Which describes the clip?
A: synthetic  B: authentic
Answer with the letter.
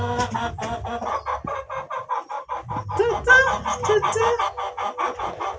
B